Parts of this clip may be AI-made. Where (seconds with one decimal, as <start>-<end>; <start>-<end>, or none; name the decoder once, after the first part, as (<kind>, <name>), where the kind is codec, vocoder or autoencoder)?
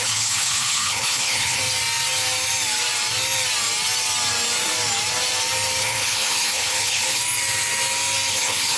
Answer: 0.0-1.6 (codec, HILCodec); 5.8-7.2; 8.3-8.8